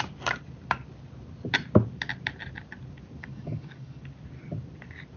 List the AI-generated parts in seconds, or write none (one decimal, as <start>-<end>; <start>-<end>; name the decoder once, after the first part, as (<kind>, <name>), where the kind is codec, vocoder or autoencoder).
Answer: 3.2-4.0 (codec, DAC)